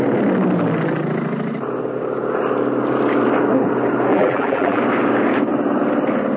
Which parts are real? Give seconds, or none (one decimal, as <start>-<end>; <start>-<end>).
0.0-4.1; 4.8-6.4